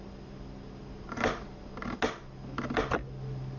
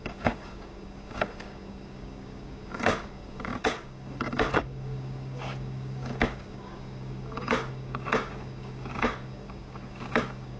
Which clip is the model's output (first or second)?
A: second